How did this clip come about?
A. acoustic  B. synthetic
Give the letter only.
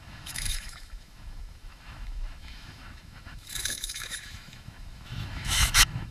B